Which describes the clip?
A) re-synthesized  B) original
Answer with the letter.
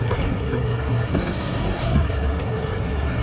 A